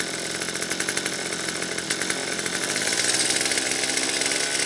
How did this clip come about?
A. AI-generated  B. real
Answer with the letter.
B